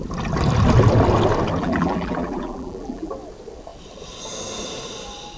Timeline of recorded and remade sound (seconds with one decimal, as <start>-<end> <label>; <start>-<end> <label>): 0.0-1.6 recorded; 1.6-3.1 remade; 3.1-5.4 recorded